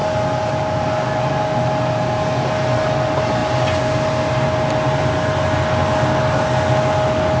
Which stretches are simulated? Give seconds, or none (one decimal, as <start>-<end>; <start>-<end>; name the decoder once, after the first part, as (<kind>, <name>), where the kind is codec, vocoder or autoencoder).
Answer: none